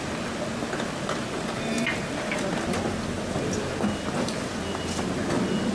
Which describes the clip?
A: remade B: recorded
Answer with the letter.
B